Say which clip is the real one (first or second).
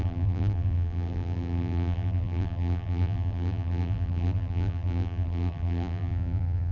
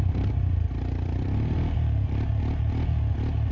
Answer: second